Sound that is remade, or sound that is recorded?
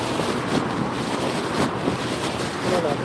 remade